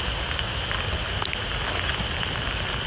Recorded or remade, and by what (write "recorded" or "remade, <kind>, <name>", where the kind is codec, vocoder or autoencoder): recorded